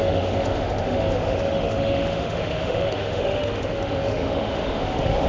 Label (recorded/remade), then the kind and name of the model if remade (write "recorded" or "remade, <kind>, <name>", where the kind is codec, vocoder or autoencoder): remade, autoencoder, DAC-VAE